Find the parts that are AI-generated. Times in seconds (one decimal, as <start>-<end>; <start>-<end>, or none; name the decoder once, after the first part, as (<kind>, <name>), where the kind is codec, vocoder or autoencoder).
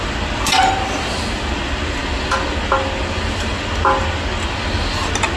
none